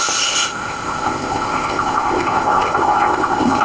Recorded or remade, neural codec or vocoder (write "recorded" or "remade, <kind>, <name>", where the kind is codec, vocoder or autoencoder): remade, codec, ZipCodec